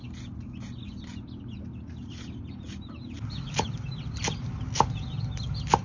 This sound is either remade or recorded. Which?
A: recorded